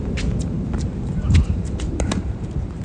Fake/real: fake